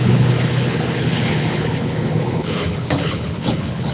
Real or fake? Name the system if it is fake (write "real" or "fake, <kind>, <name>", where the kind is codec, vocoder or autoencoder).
fake, codec, HILCodec